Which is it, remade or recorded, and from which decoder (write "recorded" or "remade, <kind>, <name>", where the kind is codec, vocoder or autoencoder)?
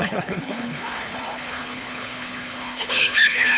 remade, codec, HILCodec